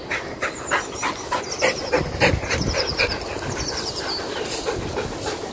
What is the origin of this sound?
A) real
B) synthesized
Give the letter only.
A